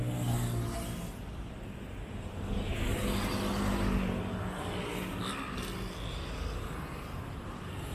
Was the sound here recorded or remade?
recorded